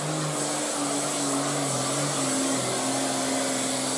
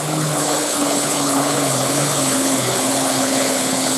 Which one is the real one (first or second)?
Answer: first